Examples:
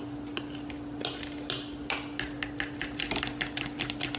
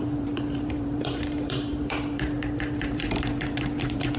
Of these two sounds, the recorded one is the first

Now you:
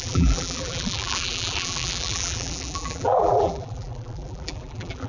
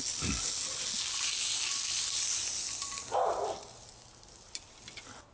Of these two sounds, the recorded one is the second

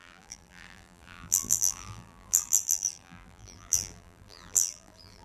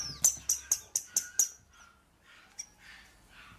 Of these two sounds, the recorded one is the second